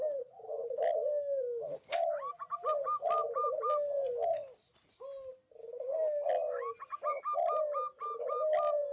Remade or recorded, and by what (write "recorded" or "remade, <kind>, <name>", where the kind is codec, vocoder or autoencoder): recorded